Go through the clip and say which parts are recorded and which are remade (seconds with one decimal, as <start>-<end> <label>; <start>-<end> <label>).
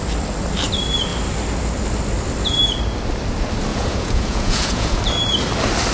0.0-3.7 recorded; 3.7-5.0 remade; 5.0-5.9 recorded